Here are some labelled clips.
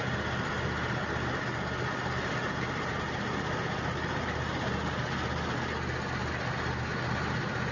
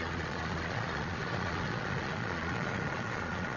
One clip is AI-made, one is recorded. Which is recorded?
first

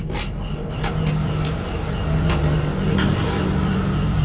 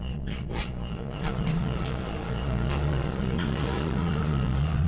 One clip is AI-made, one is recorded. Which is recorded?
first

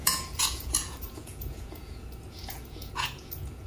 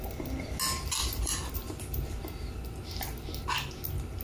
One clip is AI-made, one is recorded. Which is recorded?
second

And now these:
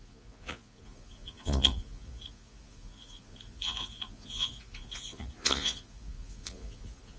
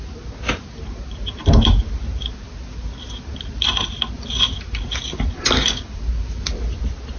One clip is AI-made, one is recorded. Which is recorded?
second